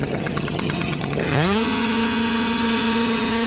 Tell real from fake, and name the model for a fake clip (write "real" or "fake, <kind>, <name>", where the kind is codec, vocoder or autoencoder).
fake, vocoder, HiFi-GAN